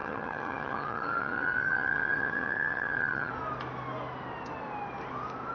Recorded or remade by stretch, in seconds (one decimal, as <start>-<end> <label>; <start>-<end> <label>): 0.0-3.3 remade; 3.3-5.5 recorded